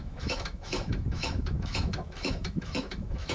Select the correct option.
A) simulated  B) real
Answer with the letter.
A